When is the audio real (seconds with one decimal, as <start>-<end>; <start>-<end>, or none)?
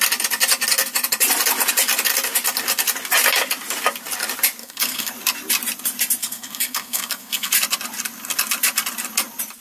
0.0-4.6; 5.1-6.2; 7.5-9.6